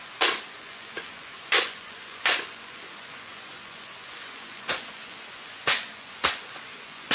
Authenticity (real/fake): fake